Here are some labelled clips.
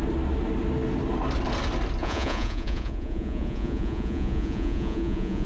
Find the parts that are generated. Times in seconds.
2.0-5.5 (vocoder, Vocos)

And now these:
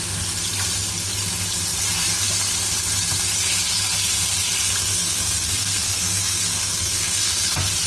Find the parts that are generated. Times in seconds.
4.8-7.3 (codec, SNAC)

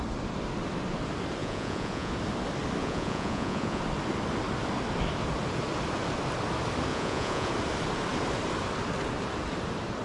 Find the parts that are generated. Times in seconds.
1.4-2.1 (vocoder, Vocos); 2.8-3.8; 6.9-7.5

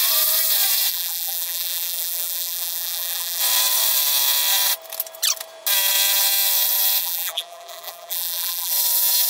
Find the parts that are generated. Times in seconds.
0.9-3.4 (vocoder, BigVGAN v2); 7.0-8.7

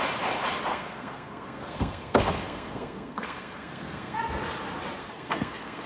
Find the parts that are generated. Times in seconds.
0.7-4.2 (codec, SNAC); 5.0-5.9

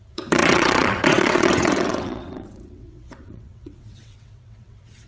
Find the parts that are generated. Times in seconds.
0.0-5.1 (vocoder, WaveNeXt)

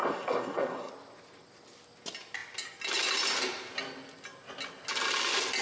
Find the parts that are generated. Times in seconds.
0.0-0.9 (codec, SNAC)

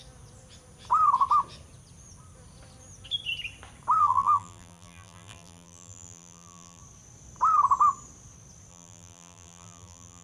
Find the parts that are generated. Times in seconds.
4.0-6.8 (vocoder, BigVGAN v2); 8.7-10.2